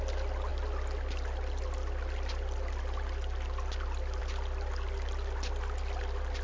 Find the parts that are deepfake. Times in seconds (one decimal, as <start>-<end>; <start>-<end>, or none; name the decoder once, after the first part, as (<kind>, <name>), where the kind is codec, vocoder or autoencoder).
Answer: none